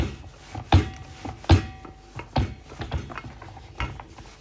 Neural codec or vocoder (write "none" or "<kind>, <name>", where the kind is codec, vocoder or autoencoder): none